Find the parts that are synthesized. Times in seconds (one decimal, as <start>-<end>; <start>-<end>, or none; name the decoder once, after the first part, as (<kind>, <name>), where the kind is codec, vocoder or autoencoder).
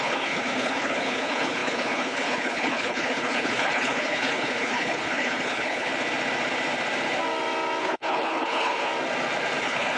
0.0-5.9 (codec, HILCodec); 7.8-8.9; 9.6-10.0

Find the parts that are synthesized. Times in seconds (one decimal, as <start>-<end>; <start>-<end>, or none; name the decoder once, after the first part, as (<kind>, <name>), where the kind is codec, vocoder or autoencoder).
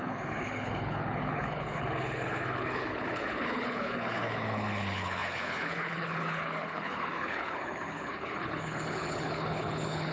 0.0-10.1 (codec, HILCodec)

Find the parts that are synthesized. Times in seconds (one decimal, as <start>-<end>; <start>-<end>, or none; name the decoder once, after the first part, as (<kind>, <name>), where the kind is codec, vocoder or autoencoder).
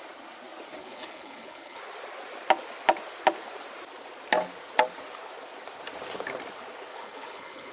0.8-1.8 (codec, HILCodec); 6.9-7.7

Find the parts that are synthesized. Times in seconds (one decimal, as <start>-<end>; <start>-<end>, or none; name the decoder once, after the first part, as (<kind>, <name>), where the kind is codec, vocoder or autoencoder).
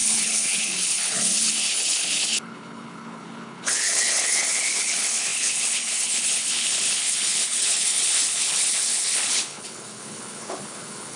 0.0-11.2 (codec, HILCodec)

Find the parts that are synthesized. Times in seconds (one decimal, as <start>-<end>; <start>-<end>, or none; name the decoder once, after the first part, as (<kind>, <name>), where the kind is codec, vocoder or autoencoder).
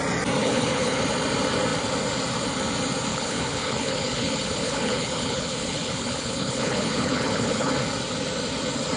0.4-1.0 (codec, HILCodec); 3.1-7.7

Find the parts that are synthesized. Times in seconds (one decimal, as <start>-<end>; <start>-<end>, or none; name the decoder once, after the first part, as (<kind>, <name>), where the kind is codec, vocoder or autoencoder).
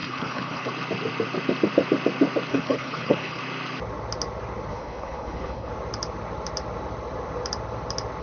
0.0-0.7 (codec, HILCodec); 2.5-3.4; 4.7-5.7